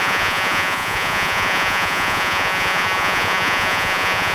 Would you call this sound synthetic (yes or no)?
yes